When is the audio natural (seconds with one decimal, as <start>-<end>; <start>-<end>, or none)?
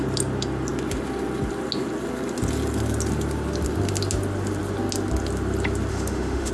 0.0-5.9